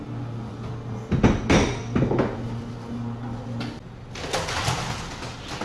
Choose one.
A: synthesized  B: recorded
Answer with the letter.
B